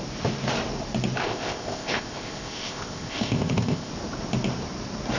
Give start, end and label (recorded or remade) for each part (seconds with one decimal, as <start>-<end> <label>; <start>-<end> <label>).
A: 0.0-1.2 recorded; 1.2-3.9 remade; 3.9-5.2 recorded

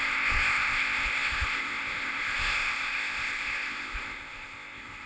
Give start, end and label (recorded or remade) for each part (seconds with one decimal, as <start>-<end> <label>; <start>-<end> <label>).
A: 0.0-5.1 remade

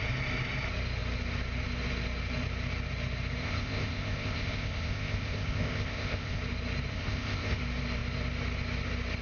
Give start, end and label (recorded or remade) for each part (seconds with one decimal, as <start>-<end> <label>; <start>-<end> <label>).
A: 0.0-3.4 recorded; 3.4-6.4 remade; 6.4-6.9 recorded; 6.9-7.6 remade; 7.6-9.2 recorded

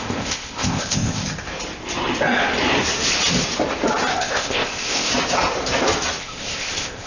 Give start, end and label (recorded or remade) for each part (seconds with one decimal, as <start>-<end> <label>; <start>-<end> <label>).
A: 0.0-1.2 remade; 1.2-4.2 recorded; 4.2-5.1 remade; 5.1-6.2 recorded; 6.2-7.1 remade

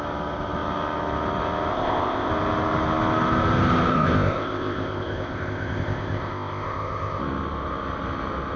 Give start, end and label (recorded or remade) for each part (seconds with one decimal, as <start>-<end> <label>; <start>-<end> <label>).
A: 0.0-1.7 recorded; 1.7-2.3 remade; 2.3-3.9 recorded; 3.9-7.2 remade; 7.2-8.6 recorded

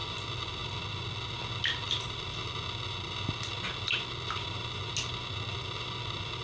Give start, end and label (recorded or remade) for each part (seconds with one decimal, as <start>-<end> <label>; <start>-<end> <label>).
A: 0.0-6.4 recorded

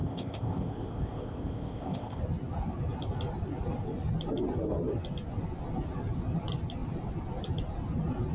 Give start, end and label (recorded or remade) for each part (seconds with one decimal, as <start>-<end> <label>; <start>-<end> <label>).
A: 0.0-2.2 remade; 2.2-8.3 recorded